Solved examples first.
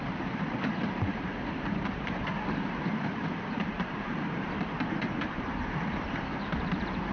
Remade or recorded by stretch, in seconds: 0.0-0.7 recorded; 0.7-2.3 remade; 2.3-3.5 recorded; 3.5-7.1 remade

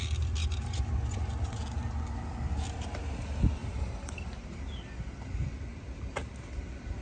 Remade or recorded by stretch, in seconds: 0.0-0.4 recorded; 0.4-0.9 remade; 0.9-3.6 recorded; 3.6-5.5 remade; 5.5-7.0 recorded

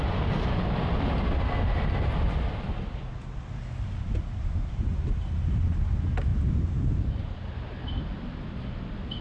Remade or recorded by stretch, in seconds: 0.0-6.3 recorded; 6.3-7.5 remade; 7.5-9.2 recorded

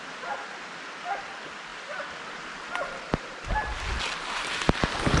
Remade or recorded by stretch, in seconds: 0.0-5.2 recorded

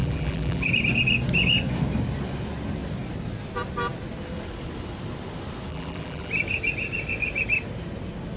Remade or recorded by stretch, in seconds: 0.0-0.7 remade; 0.7-5.7 recorded; 5.7-6.3 remade; 6.3-8.4 recorded

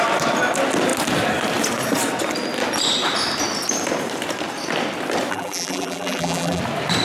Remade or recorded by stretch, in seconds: 0.0-5.3 recorded; 5.3-6.6 remade; 6.6-7.0 recorded